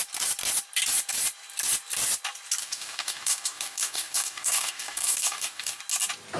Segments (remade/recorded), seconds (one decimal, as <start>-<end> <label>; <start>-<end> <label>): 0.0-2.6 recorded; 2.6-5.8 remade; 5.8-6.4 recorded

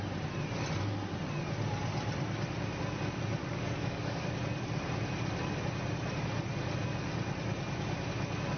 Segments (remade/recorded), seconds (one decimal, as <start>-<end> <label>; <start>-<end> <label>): 0.0-3.4 recorded; 3.4-4.3 remade; 4.3-8.6 recorded

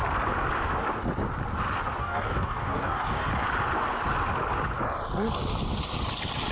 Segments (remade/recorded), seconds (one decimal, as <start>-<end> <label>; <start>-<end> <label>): 0.0-2.0 recorded; 2.0-3.3 remade; 3.3-6.5 recorded

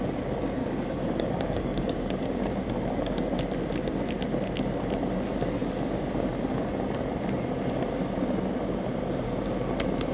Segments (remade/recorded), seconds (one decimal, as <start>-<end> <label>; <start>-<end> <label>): 0.0-0.6 recorded; 0.6-2.5 remade; 2.5-10.1 recorded

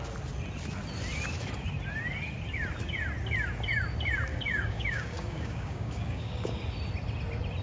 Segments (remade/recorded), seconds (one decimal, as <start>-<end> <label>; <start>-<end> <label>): 0.0-4.3 recorded; 4.3-6.6 remade; 6.6-7.6 recorded

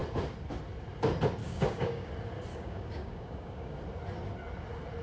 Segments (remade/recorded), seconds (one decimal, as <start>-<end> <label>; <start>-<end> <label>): 0.0-1.4 recorded; 1.4-2.1 remade; 2.1-2.5 recorded; 2.5-3.8 remade; 3.8-5.0 recorded